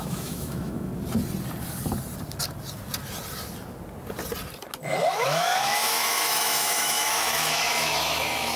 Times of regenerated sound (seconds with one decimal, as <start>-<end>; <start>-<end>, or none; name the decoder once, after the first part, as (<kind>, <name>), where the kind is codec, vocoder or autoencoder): 0.0-0.9 (autoencoder, DAC-VAE); 5.1-8.6